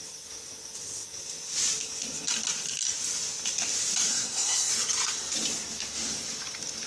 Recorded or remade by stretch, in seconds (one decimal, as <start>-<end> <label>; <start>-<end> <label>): 0.0-4.1 recorded; 4.1-4.7 remade; 4.7-6.9 recorded